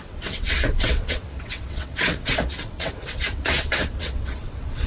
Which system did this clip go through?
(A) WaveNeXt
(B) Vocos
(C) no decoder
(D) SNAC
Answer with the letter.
A